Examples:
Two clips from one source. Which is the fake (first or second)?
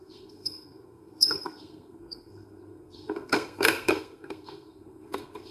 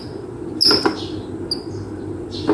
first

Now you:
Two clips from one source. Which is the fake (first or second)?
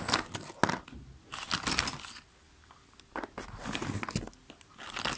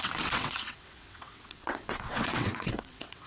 second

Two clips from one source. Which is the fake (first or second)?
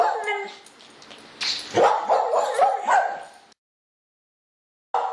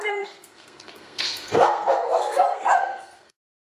second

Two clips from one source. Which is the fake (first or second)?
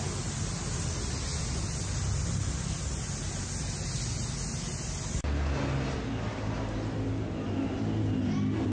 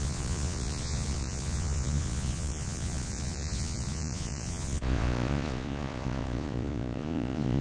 second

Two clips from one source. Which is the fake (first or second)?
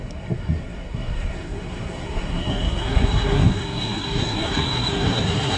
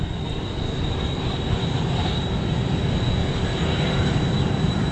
first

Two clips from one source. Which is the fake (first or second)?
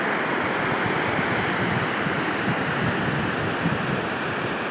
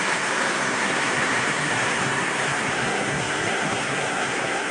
second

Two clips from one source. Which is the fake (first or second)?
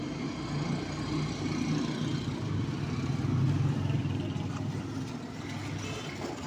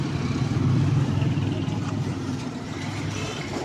second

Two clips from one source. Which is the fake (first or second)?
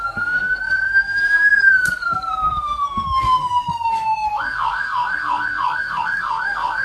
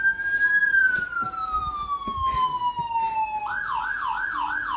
first